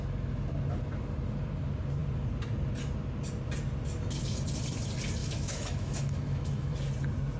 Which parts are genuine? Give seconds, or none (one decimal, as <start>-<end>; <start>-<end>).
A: 0.0-5.2; 6.7-7.4